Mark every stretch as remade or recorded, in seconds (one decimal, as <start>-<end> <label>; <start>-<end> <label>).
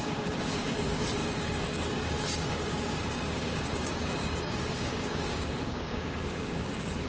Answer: 0.0-7.1 remade